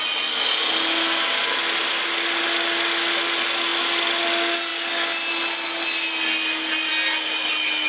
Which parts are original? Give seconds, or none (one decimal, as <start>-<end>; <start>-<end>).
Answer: 0.0-7.9